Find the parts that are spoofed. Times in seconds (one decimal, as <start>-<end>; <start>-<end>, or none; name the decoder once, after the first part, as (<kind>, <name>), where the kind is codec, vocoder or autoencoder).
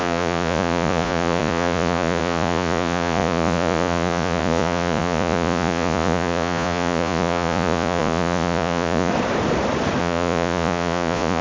0.0-9.1 (vocoder, Vocos); 10.0-11.4